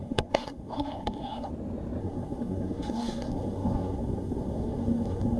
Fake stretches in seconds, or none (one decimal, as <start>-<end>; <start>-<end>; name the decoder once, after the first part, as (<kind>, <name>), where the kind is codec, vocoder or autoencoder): 0.0-1.5 (codec, SNAC); 2.0-5.4